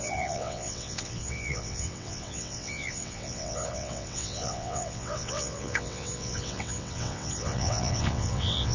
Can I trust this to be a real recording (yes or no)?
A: no